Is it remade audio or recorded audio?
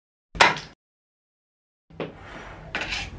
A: recorded